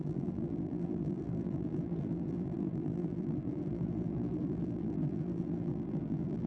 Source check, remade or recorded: remade